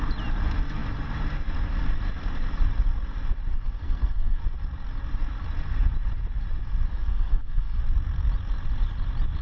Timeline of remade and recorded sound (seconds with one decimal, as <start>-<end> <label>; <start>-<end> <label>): 0.0-3.5 recorded; 3.5-4.4 remade; 4.4-6.9 recorded; 6.9-7.8 remade; 7.8-9.4 recorded